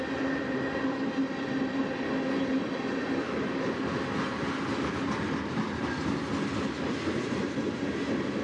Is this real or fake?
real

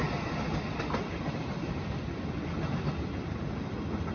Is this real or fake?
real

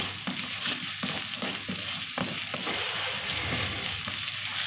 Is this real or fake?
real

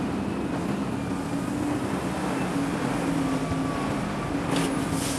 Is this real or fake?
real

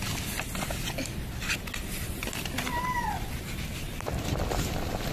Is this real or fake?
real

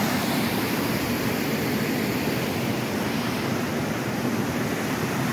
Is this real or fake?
fake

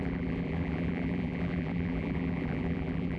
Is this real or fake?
fake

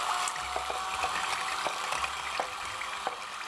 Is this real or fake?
real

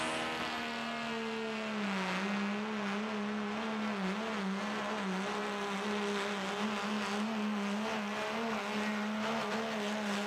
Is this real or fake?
real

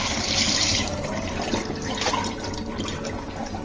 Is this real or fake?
fake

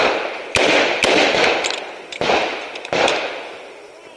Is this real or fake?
real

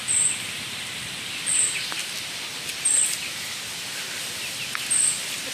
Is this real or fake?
real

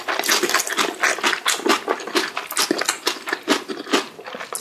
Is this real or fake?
real